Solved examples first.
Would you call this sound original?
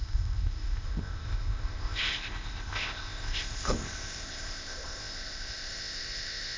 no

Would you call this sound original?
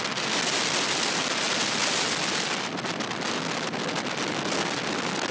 yes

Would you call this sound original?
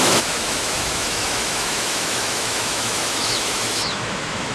no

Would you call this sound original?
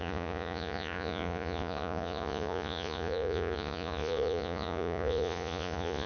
no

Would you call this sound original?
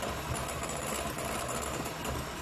yes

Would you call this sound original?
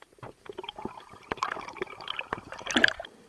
no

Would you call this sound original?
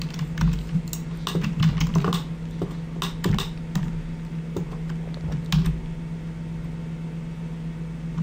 yes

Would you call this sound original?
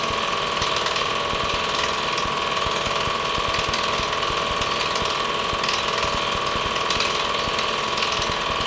yes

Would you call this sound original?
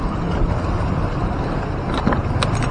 yes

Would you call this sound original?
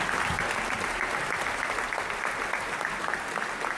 yes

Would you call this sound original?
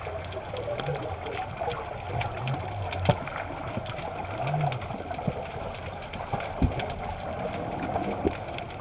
yes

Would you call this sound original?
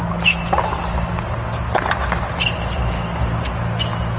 yes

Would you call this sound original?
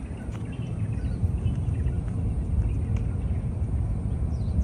yes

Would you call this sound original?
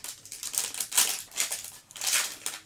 yes